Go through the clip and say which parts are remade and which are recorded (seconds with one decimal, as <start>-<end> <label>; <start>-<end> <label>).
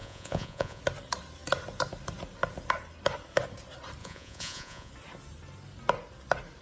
0.0-0.8 remade; 0.8-4.0 recorded; 4.0-4.9 remade; 4.9-6.6 recorded